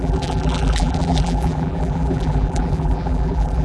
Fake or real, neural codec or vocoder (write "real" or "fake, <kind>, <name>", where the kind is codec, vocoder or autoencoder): fake, vocoder, BigVGAN v2